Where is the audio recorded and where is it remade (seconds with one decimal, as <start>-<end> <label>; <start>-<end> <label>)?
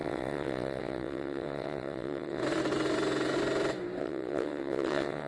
0.0-2.4 remade; 2.4-4.0 recorded; 4.0-5.3 remade